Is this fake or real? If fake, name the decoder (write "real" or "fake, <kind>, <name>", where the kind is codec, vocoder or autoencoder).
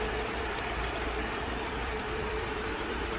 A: fake, vocoder, BigVGAN v2